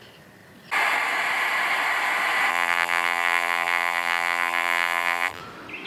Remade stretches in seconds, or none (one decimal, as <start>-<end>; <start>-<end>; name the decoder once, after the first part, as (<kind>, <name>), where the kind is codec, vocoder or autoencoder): 2.5-5.4 (vocoder, BigVGAN v2)